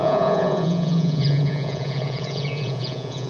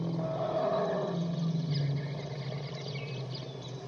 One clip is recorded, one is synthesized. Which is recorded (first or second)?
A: second